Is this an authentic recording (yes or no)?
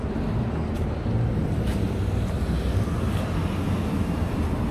yes